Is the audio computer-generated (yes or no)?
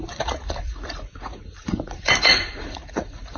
yes